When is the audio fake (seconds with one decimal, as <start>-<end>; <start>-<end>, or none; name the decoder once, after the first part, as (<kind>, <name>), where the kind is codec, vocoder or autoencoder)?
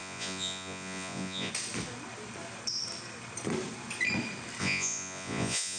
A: 0.0-1.5 (vocoder, Vocos); 4.6-5.8